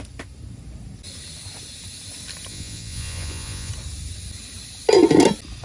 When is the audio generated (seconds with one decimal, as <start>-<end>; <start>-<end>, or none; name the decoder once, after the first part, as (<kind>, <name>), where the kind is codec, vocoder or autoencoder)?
2.5-3.7 (vocoder, Vocos)